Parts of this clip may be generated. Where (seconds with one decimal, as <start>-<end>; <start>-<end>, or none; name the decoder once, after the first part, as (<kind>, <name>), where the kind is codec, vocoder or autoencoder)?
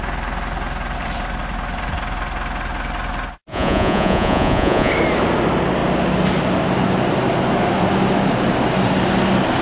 3.5-4.9 (vocoder, Vocos)